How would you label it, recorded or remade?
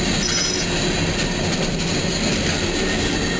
recorded